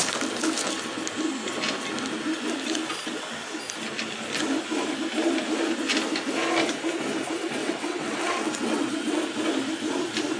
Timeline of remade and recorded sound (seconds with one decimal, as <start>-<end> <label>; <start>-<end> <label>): 0.0-7.6 recorded; 7.6-9.2 remade; 9.2-10.4 recorded